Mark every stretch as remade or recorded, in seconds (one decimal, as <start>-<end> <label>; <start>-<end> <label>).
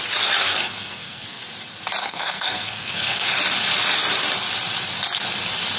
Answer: 0.0-0.4 recorded; 0.4-1.4 remade; 1.4-2.0 recorded; 2.0-3.4 remade; 3.4-5.8 recorded